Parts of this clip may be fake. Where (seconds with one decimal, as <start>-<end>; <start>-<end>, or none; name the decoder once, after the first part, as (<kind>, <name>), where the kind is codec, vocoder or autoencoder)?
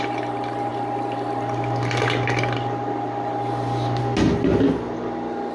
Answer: none